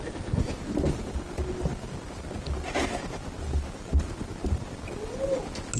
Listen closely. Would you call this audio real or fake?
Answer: real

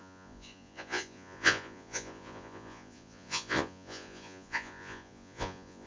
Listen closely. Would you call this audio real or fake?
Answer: fake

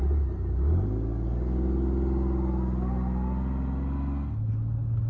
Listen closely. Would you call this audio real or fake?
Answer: real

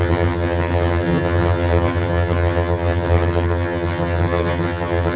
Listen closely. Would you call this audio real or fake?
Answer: fake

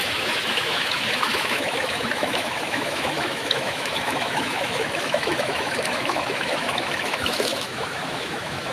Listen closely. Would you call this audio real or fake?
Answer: fake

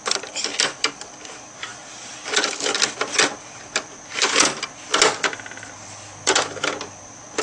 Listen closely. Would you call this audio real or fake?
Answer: real